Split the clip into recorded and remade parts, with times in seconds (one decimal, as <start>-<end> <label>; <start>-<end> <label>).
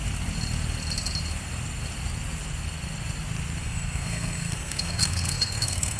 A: 0.0-3.6 recorded; 3.6-6.0 remade